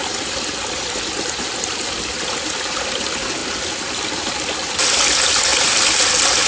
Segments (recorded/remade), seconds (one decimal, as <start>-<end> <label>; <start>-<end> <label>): 0.0-6.5 recorded

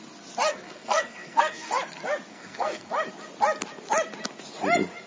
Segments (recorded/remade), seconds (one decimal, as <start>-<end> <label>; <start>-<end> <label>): 0.0-0.5 recorded; 0.5-1.7 remade; 1.7-2.3 recorded; 2.3-2.9 remade; 2.9-5.1 recorded